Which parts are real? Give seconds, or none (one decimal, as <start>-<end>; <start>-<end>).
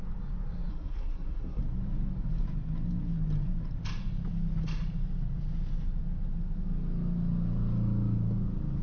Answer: 0.0-0.7; 1.6-8.8